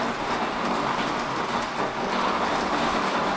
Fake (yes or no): no